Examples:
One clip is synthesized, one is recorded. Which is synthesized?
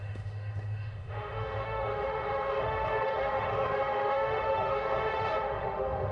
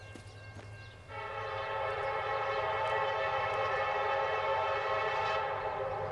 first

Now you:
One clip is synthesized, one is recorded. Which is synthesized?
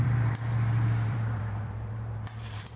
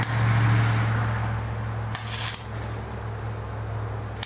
first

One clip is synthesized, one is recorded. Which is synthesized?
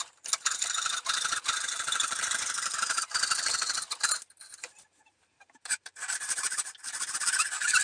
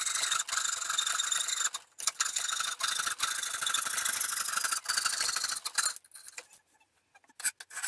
first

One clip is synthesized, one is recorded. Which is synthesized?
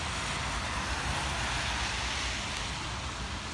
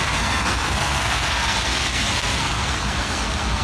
second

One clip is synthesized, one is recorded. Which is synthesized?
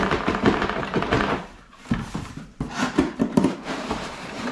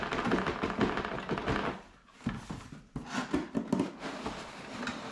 first